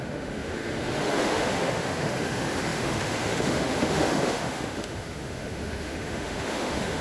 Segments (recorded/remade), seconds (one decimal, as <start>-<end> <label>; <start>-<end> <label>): 0.0-7.0 remade